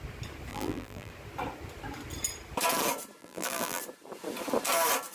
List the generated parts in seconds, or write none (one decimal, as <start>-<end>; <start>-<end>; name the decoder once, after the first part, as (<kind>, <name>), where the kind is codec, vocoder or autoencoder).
0.5-1.1 (vocoder, BigVGAN v2); 3.2-3.8